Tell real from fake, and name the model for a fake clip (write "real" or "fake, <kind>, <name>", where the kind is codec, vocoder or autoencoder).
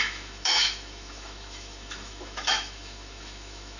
fake, autoencoder, DAC-VAE